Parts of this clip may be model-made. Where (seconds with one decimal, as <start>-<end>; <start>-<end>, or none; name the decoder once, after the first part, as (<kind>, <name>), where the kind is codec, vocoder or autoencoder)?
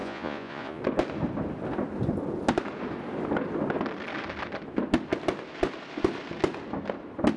0.0-0.8 (vocoder, Vocos)